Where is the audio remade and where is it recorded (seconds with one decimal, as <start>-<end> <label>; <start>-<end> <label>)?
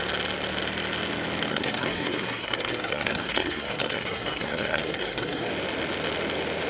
0.0-1.5 recorded; 1.5-5.5 remade; 5.5-6.7 recorded